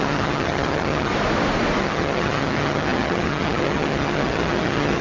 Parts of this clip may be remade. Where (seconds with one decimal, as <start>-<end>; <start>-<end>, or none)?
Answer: 0.0-1.1; 1.8-5.0